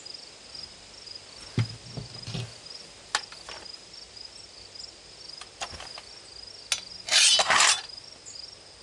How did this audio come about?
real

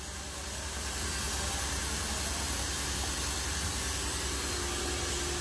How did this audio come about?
real